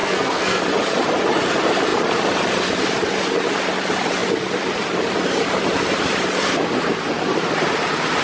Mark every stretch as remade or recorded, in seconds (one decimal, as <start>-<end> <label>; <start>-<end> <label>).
0.0-0.6 remade; 0.6-8.2 recorded